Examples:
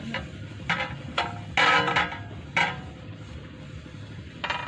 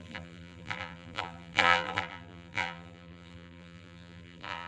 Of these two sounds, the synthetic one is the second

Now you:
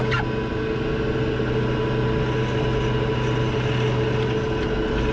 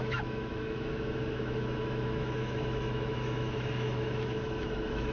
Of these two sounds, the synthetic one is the second